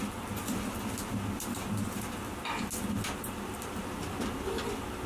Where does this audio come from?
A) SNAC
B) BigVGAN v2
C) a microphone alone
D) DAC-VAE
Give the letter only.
C